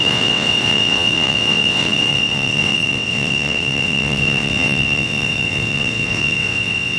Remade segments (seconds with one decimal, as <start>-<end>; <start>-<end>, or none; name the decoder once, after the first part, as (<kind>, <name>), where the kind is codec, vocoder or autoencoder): 0.0-7.0 (vocoder, WaveNeXt)